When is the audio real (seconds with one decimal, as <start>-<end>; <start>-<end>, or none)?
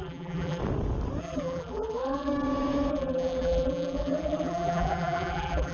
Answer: 0.6-1.2; 2.3-2.9